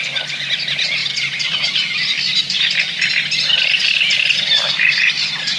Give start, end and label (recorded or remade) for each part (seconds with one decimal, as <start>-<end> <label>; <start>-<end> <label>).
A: 0.0-1.0 remade; 1.0-3.5 recorded; 3.5-5.6 remade